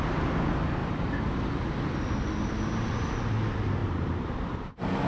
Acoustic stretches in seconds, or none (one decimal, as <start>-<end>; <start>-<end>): 0.0-0.8; 1.4-3.8; 4.6-5.1